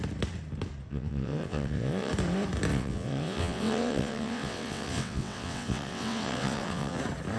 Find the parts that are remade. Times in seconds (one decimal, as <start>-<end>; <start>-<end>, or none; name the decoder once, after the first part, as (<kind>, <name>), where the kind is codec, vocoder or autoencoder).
0.9-2.1 (vocoder, WaveNeXt); 2.7-7.0